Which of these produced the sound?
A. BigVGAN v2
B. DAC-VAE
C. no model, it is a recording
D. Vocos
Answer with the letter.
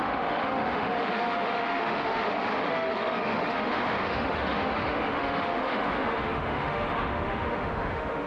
B